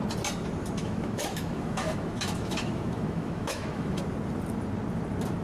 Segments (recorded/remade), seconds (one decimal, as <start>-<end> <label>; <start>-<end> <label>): 0.0-0.8 recorded; 0.8-4.0 remade; 4.0-5.4 recorded